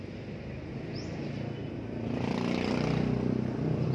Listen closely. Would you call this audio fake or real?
real